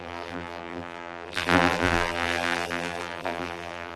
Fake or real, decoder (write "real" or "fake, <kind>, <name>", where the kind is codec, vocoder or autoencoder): fake, vocoder, BigVGAN v2